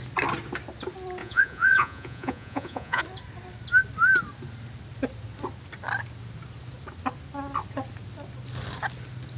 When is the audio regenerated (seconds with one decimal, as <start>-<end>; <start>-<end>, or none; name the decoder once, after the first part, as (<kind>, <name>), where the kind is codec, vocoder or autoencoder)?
1.2-3.0 (vocoder, Vocos)